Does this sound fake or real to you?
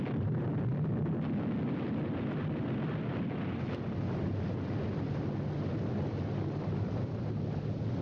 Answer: real